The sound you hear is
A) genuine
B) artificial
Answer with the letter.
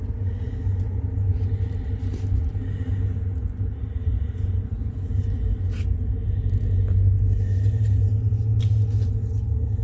A